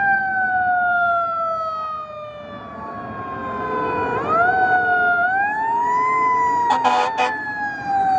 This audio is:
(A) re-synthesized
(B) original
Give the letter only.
B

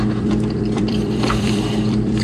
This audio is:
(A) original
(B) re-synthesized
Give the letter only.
B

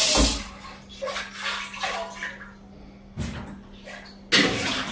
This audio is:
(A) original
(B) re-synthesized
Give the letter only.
A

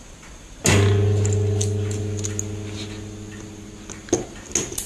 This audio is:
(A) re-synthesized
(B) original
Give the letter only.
B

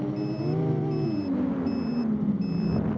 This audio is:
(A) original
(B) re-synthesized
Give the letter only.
A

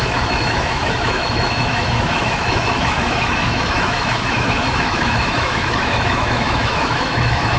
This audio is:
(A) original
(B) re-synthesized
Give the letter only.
B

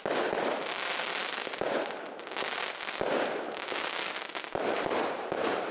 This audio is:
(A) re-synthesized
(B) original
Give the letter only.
B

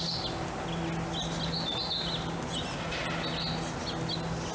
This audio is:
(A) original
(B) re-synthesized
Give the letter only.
A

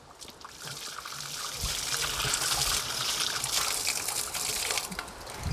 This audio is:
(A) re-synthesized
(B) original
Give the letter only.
B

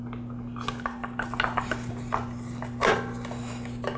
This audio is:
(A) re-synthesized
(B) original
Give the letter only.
B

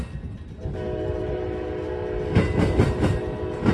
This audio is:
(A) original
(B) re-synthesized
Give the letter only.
A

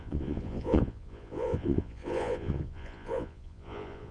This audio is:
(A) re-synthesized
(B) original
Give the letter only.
A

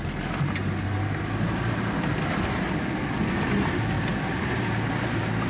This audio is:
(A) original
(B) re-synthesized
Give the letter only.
A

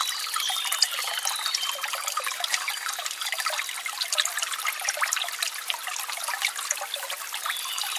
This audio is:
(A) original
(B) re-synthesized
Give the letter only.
A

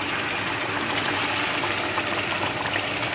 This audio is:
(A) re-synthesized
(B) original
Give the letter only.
B